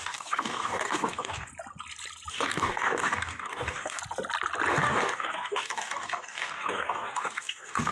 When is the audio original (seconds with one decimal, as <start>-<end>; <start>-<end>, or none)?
1.5-2.3; 4.0-4.7